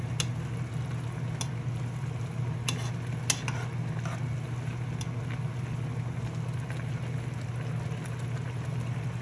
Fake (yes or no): no